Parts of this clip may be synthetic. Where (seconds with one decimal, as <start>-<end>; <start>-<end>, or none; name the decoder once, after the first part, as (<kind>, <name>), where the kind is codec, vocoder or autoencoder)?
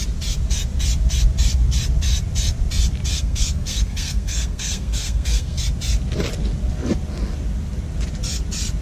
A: 3.1-5.6 (codec, SNAC)